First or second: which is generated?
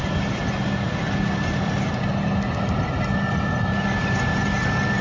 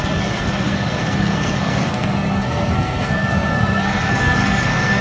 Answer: second